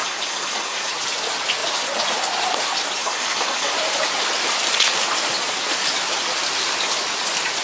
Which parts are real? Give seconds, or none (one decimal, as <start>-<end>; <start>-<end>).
0.9-3.0; 3.7-7.6